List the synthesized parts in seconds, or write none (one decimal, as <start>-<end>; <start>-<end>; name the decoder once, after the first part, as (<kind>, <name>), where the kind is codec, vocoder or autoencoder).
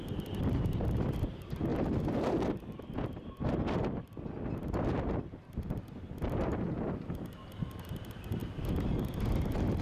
none